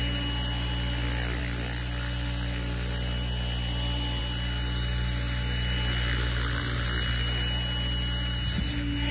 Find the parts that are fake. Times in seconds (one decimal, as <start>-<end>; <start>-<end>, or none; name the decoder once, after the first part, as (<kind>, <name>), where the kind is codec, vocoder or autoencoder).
none